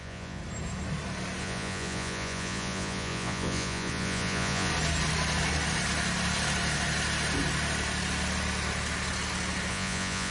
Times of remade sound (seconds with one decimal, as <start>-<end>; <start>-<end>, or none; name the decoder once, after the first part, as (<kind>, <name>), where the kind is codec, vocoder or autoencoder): 0.0-0.4 (vocoder, Vocos); 1.4-4.7; 9.7-10.3